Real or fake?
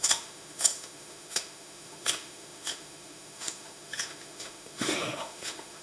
fake